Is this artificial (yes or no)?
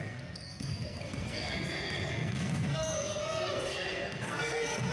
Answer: yes